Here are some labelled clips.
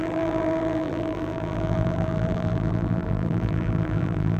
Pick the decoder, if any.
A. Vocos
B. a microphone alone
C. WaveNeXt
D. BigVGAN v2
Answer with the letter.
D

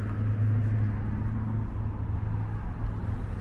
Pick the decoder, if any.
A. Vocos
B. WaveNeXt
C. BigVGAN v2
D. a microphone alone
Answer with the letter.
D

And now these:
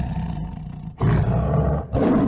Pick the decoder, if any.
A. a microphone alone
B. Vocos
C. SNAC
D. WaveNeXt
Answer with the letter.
A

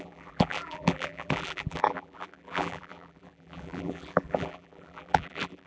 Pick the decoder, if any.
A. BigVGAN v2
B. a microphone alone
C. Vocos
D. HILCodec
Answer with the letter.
A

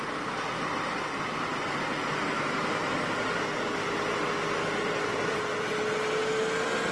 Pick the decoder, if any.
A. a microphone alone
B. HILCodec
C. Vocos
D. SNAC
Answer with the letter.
A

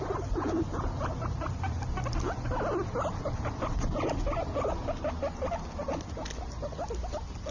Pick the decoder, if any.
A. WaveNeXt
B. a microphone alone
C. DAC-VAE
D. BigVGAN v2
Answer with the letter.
B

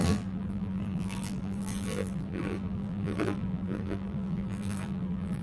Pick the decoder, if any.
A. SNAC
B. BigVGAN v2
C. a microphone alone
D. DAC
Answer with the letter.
B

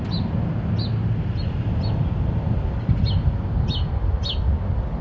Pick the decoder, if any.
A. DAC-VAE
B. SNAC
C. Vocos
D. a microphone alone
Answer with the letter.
D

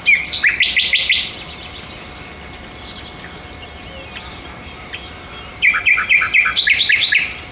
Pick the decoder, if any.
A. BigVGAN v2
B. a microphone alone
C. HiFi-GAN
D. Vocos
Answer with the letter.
B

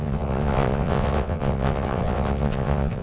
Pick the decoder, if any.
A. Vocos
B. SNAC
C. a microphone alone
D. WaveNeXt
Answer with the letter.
D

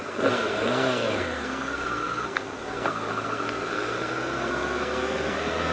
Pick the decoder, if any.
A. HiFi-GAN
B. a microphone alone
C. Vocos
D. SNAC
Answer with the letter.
D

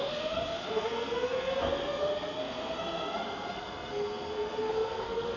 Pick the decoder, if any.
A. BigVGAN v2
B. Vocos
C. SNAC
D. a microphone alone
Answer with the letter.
C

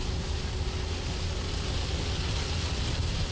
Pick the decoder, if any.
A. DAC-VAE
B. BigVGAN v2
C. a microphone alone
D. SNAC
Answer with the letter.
C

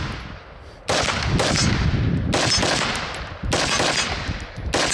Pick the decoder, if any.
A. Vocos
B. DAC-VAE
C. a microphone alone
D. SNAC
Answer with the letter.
C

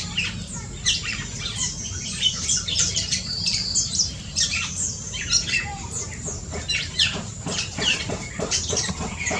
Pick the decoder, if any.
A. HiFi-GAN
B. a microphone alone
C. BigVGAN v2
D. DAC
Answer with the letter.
C